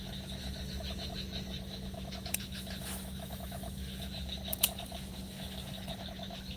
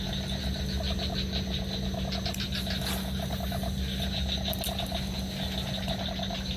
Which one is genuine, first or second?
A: second